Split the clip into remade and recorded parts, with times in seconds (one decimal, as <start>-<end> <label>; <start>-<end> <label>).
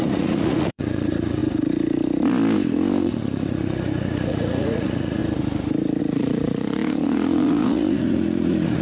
0.0-1.4 remade; 1.4-3.0 recorded; 3.0-5.2 remade; 5.2-6.0 recorded; 6.0-8.8 remade